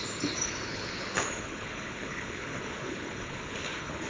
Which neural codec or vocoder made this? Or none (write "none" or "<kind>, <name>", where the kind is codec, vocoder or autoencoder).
codec, HILCodec